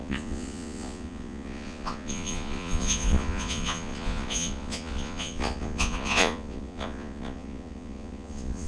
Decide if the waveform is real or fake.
fake